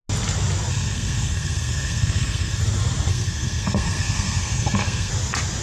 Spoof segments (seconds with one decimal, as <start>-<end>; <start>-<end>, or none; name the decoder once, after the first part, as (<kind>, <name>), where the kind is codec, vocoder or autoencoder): 0.7-2.6 (codec, SNAC); 3.1-5.1